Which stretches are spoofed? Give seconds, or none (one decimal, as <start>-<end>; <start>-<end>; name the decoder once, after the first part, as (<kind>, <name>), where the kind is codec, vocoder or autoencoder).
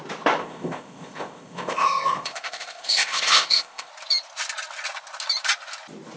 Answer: 0.4-3.9 (codec, ZipCodec)